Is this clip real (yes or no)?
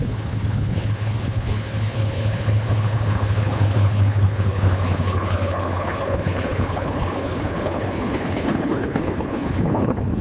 no